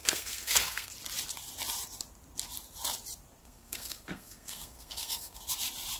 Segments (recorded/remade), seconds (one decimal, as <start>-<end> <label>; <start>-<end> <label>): 0.0-0.9 remade; 0.9-3.4 recorded; 3.4-5.4 remade; 5.4-6.0 recorded